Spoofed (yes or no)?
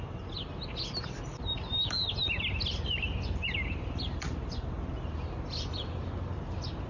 no